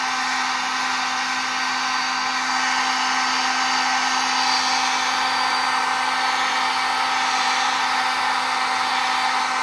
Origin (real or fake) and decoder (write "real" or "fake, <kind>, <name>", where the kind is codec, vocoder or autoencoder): real